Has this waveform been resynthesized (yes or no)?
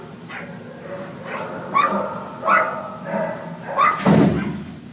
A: no